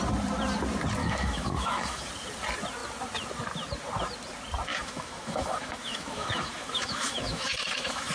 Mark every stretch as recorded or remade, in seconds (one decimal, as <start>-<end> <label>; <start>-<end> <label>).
0.0-1.0 recorded; 1.0-2.1 remade; 2.1-4.7 recorded; 4.7-8.1 remade